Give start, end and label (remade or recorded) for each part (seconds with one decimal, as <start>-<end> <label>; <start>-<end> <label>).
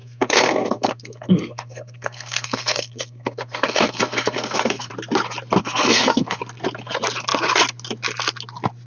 0.0-4.9 remade; 4.9-5.6 recorded; 5.6-6.4 remade; 6.4-8.9 recorded